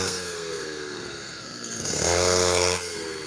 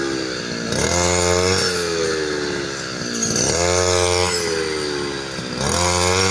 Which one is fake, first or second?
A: first